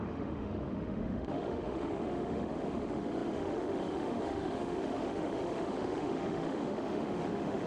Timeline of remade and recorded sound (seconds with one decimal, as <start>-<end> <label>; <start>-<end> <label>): 0.0-7.7 remade